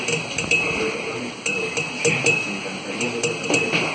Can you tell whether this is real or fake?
real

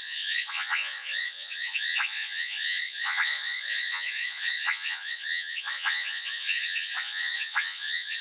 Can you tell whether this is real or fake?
fake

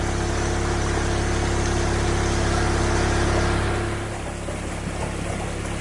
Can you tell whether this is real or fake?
real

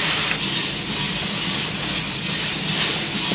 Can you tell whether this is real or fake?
real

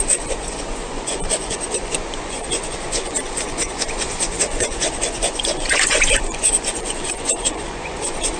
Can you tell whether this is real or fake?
fake